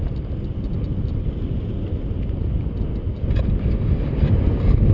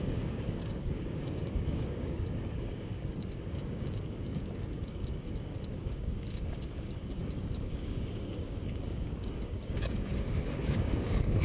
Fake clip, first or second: second